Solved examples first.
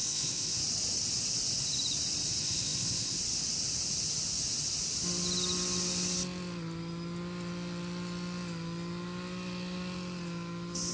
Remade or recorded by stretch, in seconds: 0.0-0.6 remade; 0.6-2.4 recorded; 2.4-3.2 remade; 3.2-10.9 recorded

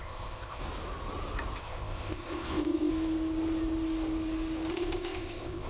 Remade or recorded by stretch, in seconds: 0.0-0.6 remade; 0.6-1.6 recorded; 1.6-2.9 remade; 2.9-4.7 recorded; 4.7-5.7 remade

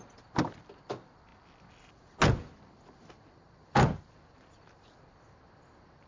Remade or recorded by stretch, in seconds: 0.0-6.1 recorded

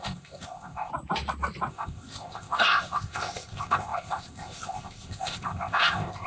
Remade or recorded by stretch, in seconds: 0.0-0.9 remade; 0.9-1.7 recorded; 1.7-6.3 remade